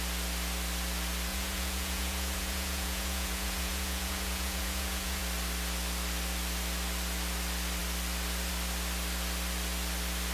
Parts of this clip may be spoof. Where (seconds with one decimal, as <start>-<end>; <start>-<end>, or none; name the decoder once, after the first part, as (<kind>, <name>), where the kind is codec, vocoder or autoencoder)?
1.3-5.2 (vocoder, Vocos)